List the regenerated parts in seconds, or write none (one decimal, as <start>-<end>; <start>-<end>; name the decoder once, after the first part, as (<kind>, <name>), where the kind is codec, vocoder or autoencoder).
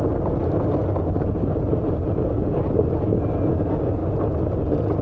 none